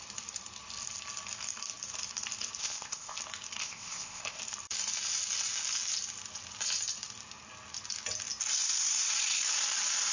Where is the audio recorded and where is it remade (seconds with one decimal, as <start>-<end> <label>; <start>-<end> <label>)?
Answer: 0.0-2.6 recorded; 2.6-3.2 remade; 3.2-3.6 recorded; 3.6-4.4 remade; 4.4-10.1 recorded